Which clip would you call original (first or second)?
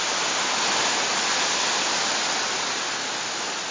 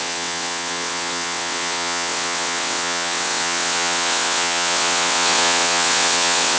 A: first